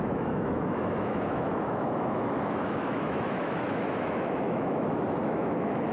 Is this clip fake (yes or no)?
yes